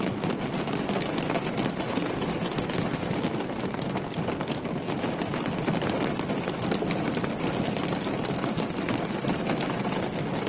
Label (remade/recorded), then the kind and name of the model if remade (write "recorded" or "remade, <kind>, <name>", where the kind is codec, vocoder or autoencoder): recorded